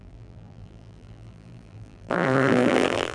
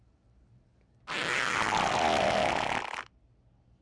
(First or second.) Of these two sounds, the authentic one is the second